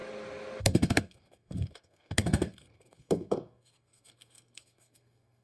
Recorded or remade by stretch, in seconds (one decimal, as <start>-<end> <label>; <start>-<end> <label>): 0.0-0.6 recorded; 0.6-5.4 remade